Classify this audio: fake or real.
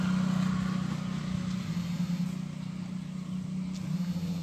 real